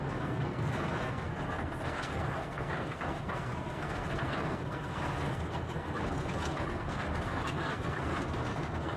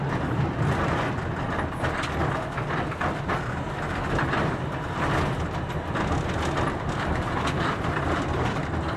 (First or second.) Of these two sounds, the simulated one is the first